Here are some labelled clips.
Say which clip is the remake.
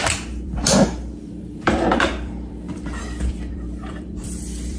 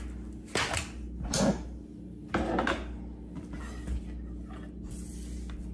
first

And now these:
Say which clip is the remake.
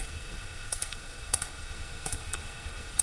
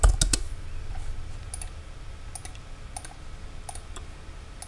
first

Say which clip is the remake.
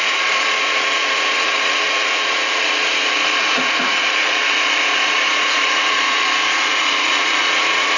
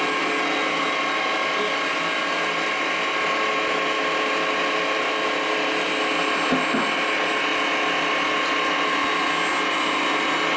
first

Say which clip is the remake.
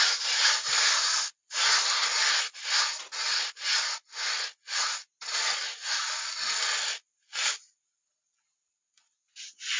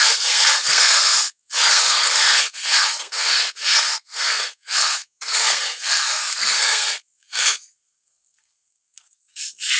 second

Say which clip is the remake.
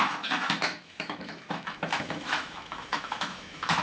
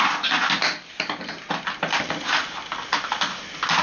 first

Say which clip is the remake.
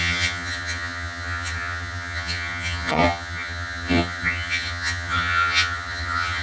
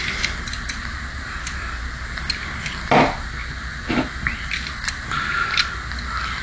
first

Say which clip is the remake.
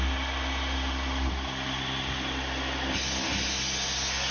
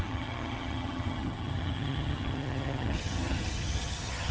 second